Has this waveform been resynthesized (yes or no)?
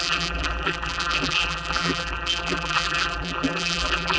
yes